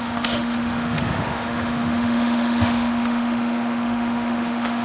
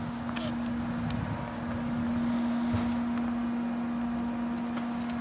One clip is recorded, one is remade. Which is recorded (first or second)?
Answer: second